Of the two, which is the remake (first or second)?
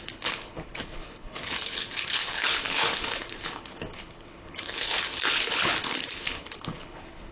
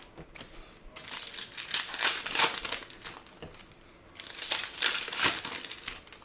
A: first